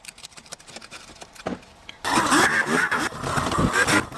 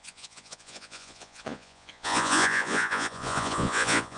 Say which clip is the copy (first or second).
second